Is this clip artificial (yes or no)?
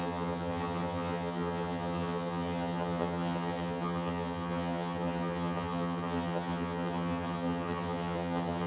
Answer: yes